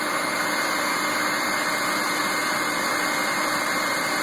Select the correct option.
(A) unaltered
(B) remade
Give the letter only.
A